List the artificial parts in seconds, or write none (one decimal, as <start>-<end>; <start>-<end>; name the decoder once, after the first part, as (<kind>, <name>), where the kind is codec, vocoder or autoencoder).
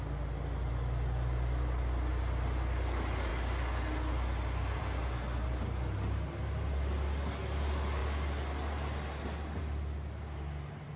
none